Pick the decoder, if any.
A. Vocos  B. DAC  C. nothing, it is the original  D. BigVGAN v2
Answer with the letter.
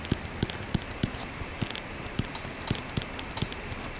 C